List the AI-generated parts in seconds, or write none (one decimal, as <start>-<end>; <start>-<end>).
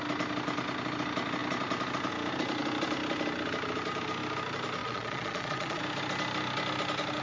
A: 4.8-5.8